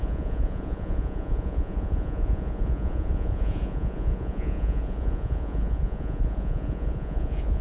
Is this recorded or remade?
remade